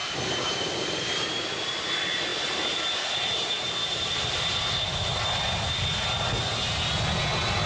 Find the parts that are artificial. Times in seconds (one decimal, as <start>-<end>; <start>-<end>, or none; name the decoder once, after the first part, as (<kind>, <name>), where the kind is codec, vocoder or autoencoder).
none